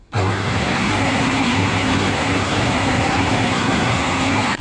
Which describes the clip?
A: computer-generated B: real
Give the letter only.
A